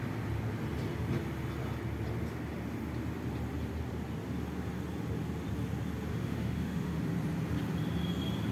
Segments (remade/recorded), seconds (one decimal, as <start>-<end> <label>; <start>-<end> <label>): 0.0-6.1 recorded; 6.1-7.0 remade; 7.0-8.5 recorded